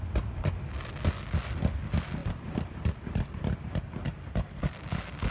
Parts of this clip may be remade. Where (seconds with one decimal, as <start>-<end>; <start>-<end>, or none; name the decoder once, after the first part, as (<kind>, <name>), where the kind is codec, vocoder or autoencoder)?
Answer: 2.2-4.6 (vocoder, BigVGAN v2)